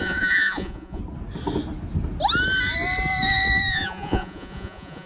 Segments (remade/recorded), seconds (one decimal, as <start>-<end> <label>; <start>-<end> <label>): 0.0-1.0 remade; 1.0-3.7 recorded; 3.7-5.1 remade